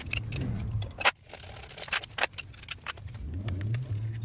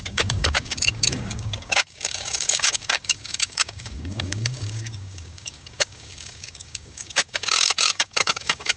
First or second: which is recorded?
first